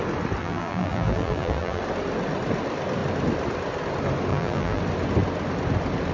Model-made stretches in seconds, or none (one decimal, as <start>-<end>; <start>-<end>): 0.4-1.8; 4.3-4.8